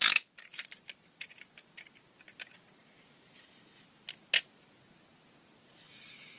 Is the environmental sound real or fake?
real